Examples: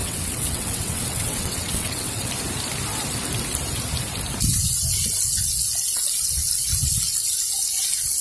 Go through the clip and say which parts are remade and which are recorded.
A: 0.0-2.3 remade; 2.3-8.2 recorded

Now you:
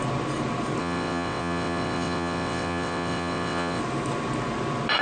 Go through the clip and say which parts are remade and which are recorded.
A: 0.0-0.8 recorded; 0.8-3.8 remade; 3.8-5.0 recorded

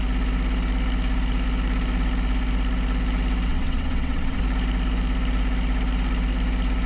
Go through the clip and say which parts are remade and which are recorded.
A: 0.0-3.5 recorded; 3.5-4.4 remade; 4.4-6.9 recorded

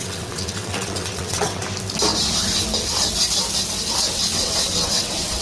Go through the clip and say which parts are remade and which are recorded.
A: 0.0-1.6 remade; 1.6-4.1 recorded; 4.1-5.4 remade

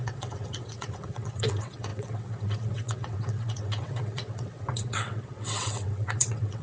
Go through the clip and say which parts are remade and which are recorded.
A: 0.0-6.6 remade